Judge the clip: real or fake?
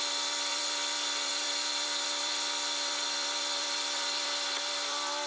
fake